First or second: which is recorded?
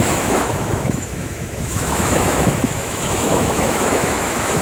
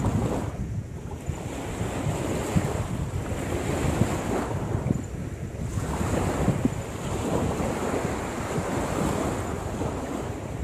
second